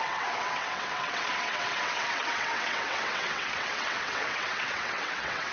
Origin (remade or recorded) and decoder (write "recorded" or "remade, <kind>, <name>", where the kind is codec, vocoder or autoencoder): remade, vocoder, WaveNeXt